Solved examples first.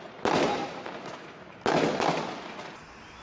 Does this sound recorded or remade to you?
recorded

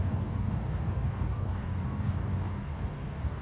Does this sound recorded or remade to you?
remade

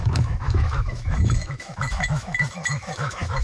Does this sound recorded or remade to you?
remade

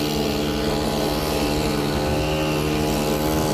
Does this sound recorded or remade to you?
recorded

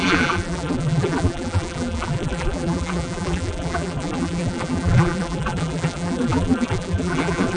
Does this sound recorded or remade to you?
remade